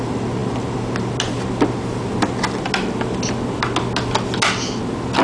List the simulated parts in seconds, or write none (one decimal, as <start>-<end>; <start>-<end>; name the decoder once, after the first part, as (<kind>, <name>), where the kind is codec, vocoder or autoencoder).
none